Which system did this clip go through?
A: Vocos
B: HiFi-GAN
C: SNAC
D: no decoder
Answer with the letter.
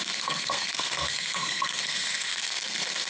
C